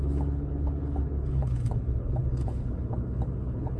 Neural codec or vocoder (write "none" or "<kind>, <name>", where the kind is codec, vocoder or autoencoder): codec, HILCodec